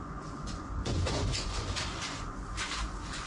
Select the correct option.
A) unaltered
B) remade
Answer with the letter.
B